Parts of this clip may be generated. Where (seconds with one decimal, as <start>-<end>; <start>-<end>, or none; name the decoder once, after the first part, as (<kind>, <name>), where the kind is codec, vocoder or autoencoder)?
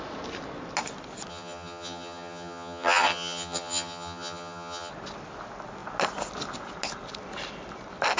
1.3-4.9 (vocoder, HiFi-GAN)